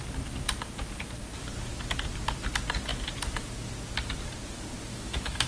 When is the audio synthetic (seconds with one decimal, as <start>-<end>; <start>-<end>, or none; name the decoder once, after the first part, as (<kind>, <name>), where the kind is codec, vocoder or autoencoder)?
4.9-5.5 (autoencoder, DAC-VAE)